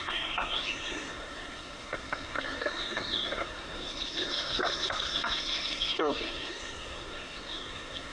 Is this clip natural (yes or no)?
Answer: no